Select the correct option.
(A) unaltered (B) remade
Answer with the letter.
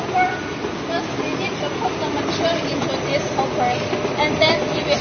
A